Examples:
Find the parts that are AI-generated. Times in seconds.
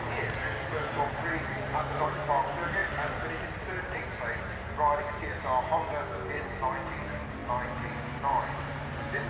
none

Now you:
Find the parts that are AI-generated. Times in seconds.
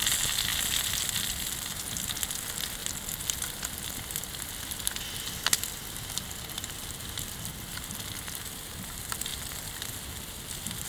0.5-1.8 (vocoder, BigVGAN v2); 9.3-10.9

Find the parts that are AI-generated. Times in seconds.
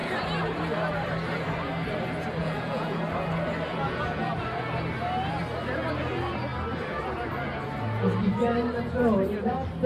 2.4-3.0 (vocoder, Vocos); 3.7-4.3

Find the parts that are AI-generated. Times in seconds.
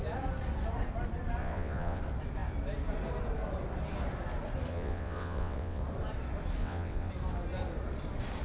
1.4-2.0 (vocoder, WaveNeXt); 4.7-5.8; 6.6-7.1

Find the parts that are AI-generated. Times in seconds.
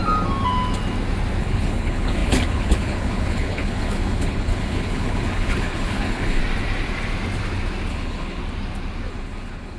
1.4-6.4 (codec, HILCodec); 7.9-8.4; 9.1-9.8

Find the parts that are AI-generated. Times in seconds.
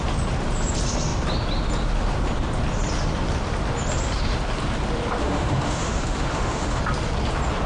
5.2-6.8 (autoencoder, DAC-VAE)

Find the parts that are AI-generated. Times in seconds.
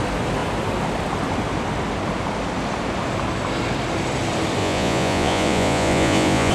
4.6-6.5 (vocoder, Vocos)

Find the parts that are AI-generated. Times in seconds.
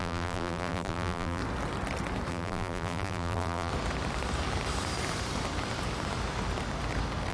0.0-1.4 (vocoder, BigVGAN v2); 2.3-3.7